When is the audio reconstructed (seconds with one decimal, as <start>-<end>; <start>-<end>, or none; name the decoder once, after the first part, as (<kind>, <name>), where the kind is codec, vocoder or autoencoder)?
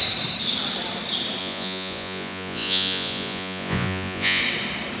1.4-4.4 (vocoder, Vocos)